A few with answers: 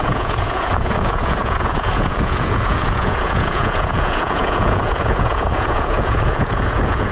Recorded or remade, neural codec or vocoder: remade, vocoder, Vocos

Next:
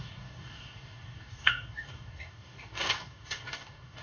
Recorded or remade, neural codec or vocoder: remade, codec, DAC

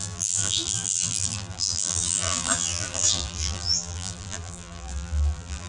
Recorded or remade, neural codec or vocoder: remade, vocoder, BigVGAN v2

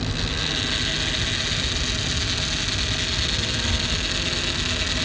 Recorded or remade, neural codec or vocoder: recorded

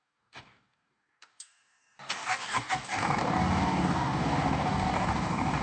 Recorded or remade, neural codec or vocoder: remade, codec, DAC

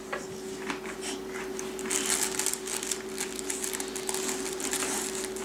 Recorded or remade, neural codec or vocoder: recorded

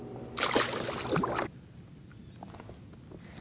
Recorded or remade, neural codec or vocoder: recorded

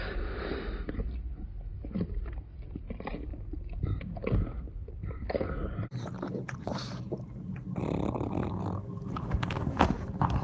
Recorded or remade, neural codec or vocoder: recorded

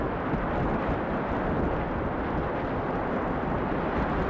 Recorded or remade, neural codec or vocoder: recorded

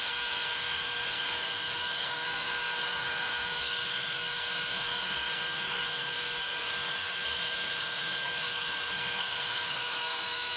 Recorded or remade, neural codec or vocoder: remade, codec, SNAC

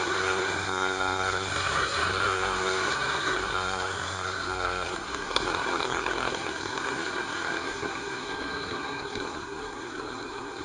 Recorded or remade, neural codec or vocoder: remade, codec, SNAC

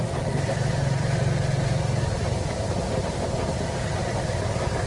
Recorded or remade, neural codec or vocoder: recorded